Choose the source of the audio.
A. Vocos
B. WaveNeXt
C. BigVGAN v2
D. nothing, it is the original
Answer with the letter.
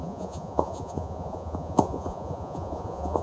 A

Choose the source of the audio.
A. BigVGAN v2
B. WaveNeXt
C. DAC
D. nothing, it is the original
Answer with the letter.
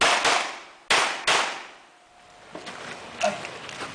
D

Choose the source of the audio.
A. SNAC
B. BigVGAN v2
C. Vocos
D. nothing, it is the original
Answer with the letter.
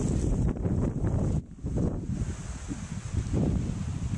D